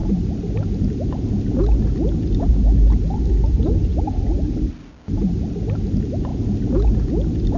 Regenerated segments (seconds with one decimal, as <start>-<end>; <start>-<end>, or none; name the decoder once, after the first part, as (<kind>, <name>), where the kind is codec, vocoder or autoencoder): none